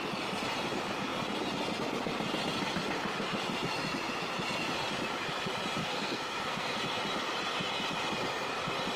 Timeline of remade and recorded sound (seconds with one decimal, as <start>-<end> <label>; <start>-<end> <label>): 0.0-5.8 recorded; 5.8-6.8 remade; 6.8-9.0 recorded